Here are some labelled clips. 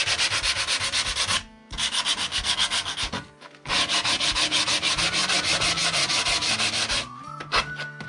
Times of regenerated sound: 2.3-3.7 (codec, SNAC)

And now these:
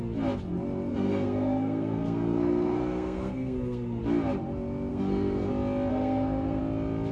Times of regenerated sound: 0.9-4.0 (codec, SNAC); 4.9-5.5; 5.9-6.6

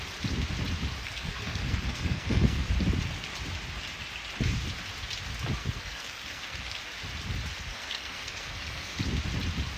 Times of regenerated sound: 1.0-2.7 (codec, SNAC); 5.6-6.8; 7.7-9.0

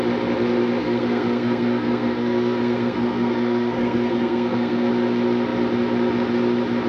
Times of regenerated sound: 0.8-4.9 (codec, SNAC)